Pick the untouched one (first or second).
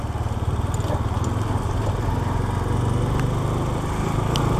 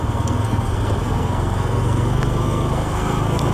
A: first